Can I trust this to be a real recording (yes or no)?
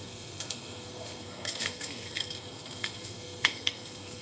no